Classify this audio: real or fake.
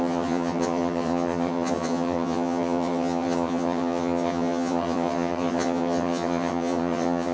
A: fake